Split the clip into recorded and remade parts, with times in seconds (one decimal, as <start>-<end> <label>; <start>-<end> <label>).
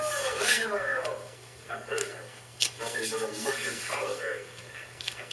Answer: 0.0-5.3 remade